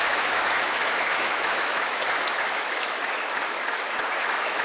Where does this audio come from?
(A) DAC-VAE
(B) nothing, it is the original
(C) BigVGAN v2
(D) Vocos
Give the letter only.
A